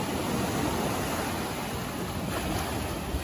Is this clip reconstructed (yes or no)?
no